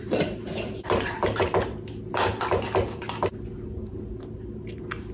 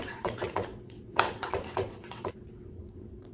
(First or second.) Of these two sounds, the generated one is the second